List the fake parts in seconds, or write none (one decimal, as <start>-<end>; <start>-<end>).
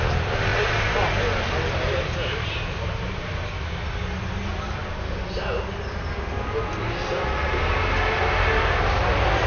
none